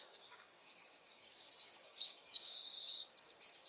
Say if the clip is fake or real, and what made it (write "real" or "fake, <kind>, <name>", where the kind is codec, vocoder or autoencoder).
fake, codec, DAC